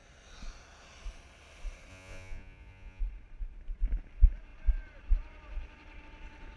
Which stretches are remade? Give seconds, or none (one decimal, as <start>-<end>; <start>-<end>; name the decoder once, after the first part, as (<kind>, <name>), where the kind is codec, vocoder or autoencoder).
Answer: 1.9-3.0 (vocoder, Vocos)